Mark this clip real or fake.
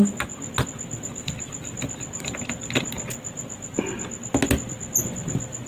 real